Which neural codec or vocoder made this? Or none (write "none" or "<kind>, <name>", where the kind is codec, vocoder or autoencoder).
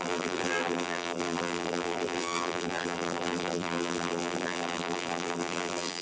vocoder, BigVGAN v2